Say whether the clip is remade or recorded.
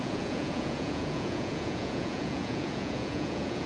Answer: remade